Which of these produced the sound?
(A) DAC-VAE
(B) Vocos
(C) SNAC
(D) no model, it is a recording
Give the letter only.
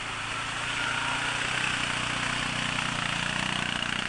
D